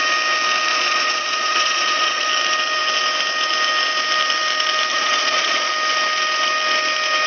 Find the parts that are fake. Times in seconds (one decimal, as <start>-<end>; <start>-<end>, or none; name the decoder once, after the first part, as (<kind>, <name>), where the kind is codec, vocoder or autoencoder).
0.7-2.3 (vocoder, Vocos); 4.9-5.7

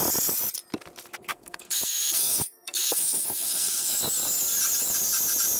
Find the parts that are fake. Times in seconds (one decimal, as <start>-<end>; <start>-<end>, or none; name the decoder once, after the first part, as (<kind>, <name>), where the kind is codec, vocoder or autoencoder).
1.3-4.0 (codec, SNAC)